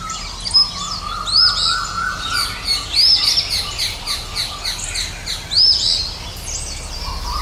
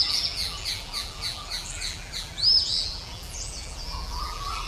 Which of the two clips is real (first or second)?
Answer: first